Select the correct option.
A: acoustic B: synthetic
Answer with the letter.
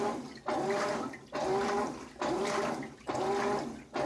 A